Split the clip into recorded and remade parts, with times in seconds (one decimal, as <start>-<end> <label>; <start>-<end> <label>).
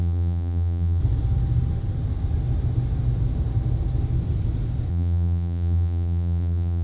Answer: 0.0-1.0 remade; 1.0-4.9 recorded; 4.9-6.8 remade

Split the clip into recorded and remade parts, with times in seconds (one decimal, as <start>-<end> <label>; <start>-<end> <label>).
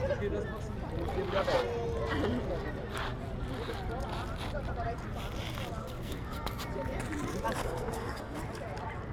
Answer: 0.0-5.8 recorded; 5.8-6.5 remade; 6.5-7.6 recorded; 7.6-8.4 remade; 8.4-9.1 recorded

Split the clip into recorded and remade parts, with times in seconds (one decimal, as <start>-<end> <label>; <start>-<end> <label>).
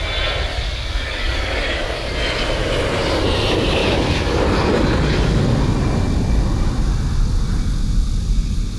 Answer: 0.0-0.5 recorded; 0.5-2.1 remade; 2.1-3.8 recorded; 3.8-5.4 remade; 5.4-8.8 recorded